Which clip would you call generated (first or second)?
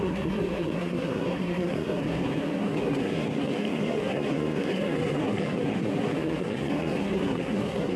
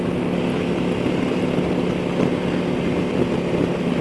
first